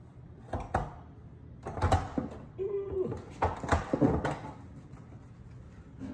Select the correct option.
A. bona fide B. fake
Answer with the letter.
A